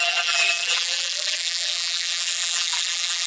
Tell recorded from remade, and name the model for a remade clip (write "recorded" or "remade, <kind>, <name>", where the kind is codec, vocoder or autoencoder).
remade, vocoder, BigVGAN v2